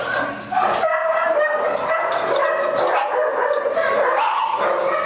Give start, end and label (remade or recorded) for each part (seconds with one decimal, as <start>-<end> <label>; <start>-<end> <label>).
0.0-1.0 recorded; 1.0-1.9 remade; 1.9-3.3 recorded; 3.3-4.4 remade; 4.4-5.1 recorded